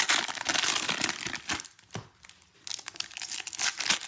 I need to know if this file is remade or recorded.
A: recorded